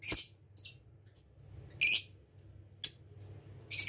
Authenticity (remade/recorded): recorded